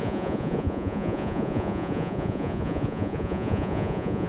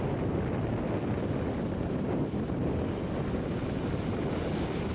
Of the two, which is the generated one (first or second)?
first